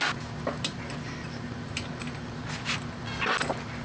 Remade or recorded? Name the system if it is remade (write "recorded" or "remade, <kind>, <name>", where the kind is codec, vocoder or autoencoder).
recorded